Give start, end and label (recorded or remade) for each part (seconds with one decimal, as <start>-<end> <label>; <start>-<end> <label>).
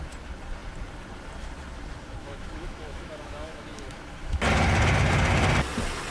0.0-2.2 recorded; 2.2-4.4 remade; 4.4-6.1 recorded